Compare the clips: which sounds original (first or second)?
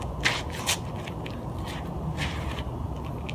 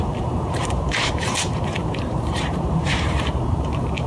first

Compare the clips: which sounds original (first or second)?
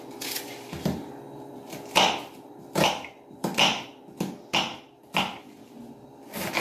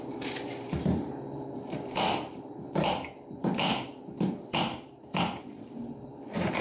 first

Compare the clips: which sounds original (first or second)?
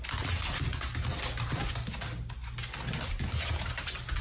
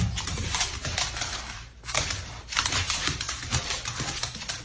first